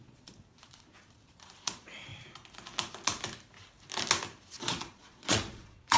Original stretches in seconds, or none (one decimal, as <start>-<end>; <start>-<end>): 2.1-4.5